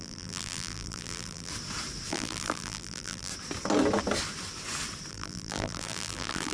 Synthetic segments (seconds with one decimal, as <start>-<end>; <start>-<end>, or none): 0.0-1.5; 2.1-3.3; 5.1-6.5